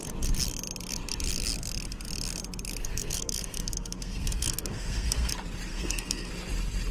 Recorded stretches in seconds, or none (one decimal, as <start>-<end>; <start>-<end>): 0.0-2.8; 5.3-5.7; 6.3-6.9